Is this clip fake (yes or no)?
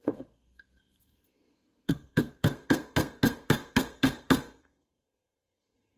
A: yes